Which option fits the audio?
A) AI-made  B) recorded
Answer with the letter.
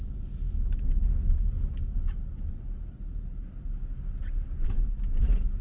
B